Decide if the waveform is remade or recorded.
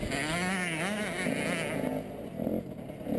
recorded